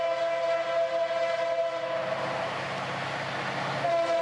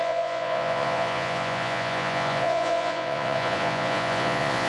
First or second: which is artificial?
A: second